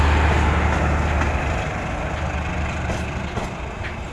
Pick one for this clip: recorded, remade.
recorded